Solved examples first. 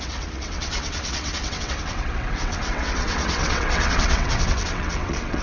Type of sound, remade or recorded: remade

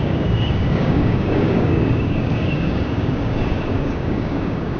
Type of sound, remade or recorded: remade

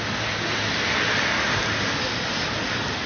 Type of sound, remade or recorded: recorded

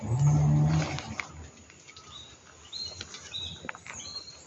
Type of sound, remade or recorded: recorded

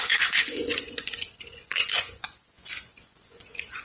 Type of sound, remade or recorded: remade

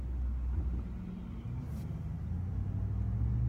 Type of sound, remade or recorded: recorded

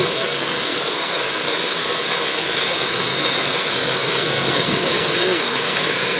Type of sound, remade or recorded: remade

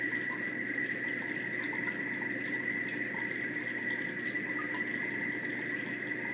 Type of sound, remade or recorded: recorded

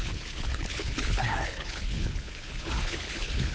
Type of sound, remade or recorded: remade